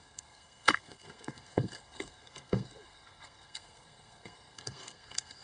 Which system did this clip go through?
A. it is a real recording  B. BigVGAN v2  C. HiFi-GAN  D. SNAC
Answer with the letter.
D